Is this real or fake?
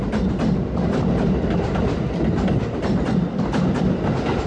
real